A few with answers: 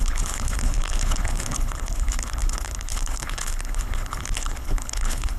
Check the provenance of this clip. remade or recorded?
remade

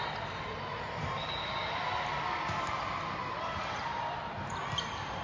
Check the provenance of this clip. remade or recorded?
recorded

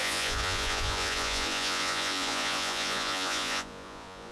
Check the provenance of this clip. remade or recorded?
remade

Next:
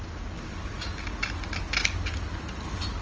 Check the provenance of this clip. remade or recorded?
recorded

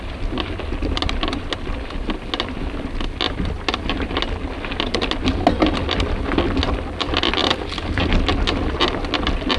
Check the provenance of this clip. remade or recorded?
recorded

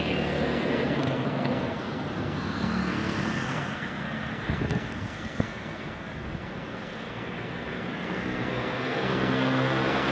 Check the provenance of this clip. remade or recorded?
remade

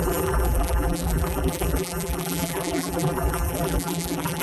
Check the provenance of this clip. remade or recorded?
remade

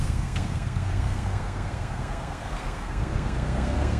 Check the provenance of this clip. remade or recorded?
remade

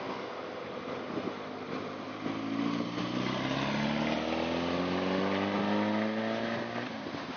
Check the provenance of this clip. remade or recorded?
recorded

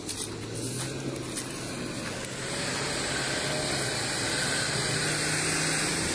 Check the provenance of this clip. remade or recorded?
recorded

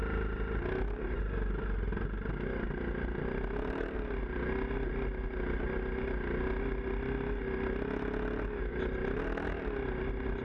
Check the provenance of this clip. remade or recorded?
recorded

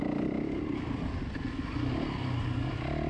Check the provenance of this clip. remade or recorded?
recorded